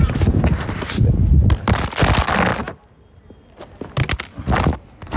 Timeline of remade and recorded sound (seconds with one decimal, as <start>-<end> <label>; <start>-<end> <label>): 0.0-5.2 recorded